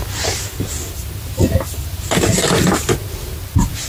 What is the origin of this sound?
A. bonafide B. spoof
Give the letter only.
A